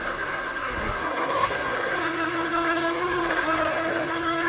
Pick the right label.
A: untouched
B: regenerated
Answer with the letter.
B